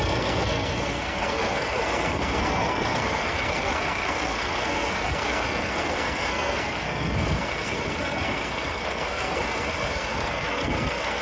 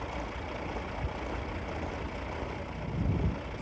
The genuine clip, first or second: second